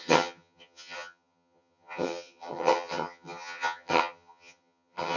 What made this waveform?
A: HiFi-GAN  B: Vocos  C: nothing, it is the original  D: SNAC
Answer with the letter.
A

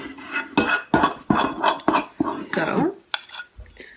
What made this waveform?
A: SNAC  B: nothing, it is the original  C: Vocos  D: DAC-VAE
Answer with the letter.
B